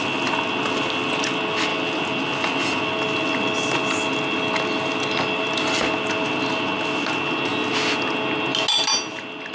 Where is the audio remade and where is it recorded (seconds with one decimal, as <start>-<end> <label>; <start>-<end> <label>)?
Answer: 0.0-9.5 recorded